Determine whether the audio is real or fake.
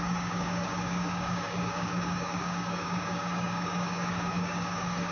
fake